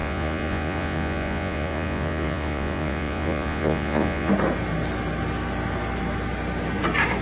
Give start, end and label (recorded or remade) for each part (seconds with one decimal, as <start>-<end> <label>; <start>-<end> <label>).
0.0-4.3 remade; 4.3-7.2 recorded